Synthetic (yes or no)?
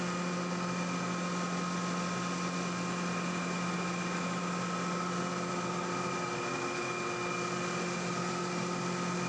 no